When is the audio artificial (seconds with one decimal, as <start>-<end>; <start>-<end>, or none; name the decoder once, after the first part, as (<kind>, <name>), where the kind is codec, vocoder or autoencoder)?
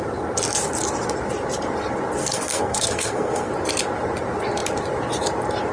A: 2.2-3.5 (codec, SNAC)